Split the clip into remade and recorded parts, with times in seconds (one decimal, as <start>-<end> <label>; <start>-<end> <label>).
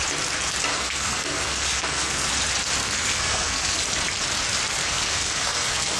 0.0-0.7 recorded; 0.7-2.3 remade; 2.3-2.8 recorded; 2.8-3.8 remade; 3.8-4.8 recorded; 4.8-6.0 remade